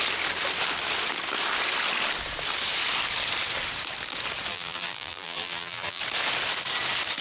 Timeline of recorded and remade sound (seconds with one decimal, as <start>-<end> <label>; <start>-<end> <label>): 0.0-4.5 recorded; 4.5-6.0 remade; 6.0-7.2 recorded